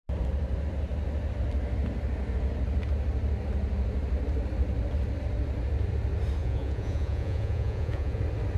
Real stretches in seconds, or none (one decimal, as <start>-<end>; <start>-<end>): 0.0-6.4; 8.2-8.6